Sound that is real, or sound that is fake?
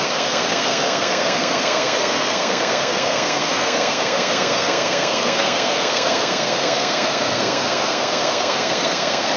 fake